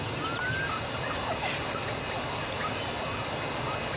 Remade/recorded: recorded